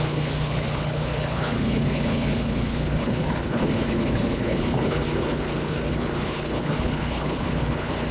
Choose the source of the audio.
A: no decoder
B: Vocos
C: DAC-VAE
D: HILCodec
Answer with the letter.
D